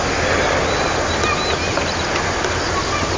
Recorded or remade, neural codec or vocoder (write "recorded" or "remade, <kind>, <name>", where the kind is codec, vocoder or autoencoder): recorded